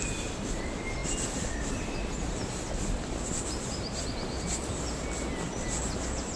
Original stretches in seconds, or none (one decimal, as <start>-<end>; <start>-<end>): 0.0-6.4